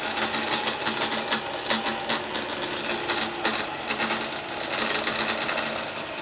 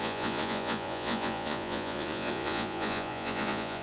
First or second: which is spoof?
second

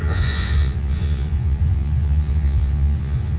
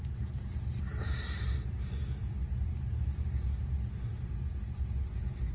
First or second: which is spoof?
first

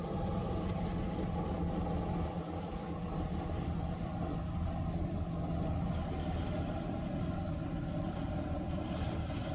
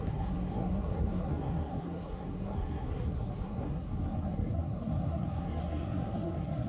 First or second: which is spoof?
second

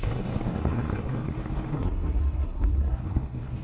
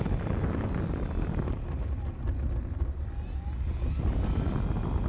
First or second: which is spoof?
first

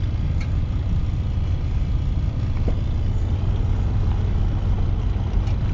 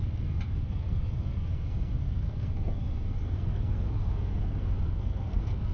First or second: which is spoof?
second